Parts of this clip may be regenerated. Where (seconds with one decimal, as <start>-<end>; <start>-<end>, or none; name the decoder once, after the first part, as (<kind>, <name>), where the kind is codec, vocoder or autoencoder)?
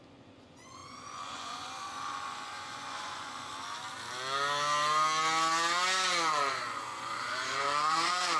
0.0-3.5 (vocoder, Vocos); 6.3-8.4